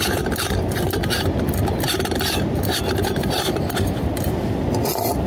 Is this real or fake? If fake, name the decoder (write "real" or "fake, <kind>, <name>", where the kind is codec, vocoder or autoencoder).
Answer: real